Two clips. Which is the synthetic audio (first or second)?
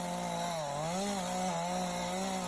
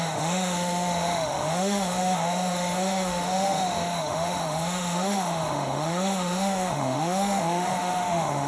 second